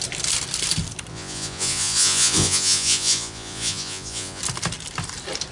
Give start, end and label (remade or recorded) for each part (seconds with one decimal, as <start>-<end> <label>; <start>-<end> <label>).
0.0-1.1 recorded; 1.1-4.4 remade; 4.4-5.5 recorded